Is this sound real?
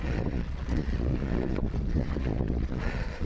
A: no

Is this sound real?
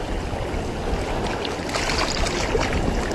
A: yes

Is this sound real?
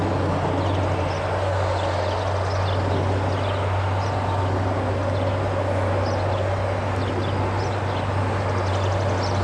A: yes